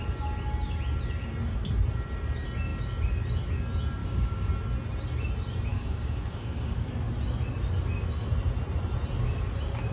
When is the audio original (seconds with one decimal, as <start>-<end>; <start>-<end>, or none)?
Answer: 0.0-4.0; 4.5-5.7; 6.9-9.9